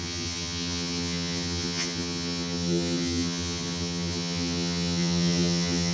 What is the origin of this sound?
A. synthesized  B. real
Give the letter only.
A